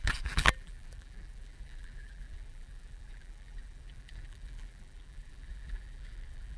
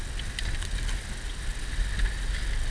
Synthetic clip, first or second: first